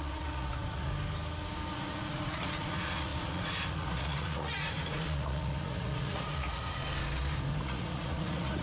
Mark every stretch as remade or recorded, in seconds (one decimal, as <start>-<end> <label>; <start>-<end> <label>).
0.0-0.9 remade; 0.9-1.7 recorded; 1.7-6.8 remade; 6.8-7.6 recorded; 7.6-8.6 remade